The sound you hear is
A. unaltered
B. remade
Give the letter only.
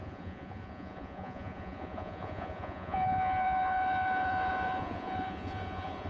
B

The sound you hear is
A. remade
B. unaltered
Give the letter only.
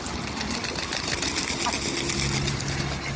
B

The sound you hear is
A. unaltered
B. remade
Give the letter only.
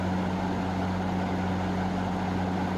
A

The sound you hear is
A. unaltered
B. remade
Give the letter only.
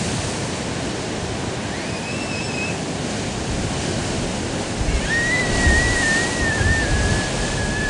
A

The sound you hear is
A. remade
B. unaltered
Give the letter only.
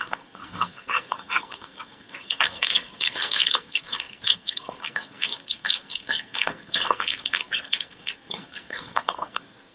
A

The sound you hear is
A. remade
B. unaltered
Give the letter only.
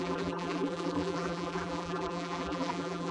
A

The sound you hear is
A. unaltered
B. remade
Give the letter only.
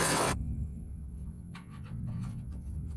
B